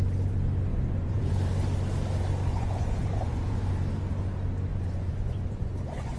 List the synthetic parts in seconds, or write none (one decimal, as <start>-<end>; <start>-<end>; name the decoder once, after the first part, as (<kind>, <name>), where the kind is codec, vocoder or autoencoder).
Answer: 0.7-1.3 (vocoder, Vocos); 2.5-3.7; 4.7-6.2